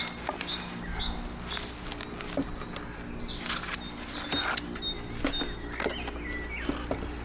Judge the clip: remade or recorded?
recorded